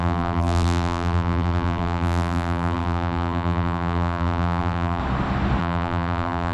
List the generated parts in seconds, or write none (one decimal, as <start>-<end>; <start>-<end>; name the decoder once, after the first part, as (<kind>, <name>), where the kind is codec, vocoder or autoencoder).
0.0-5.0 (vocoder, BigVGAN v2); 5.6-6.5